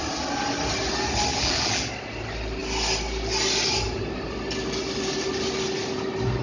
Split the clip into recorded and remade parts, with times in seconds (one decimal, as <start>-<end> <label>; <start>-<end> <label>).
0.0-1.3 recorded; 1.3-1.9 remade; 1.9-6.4 recorded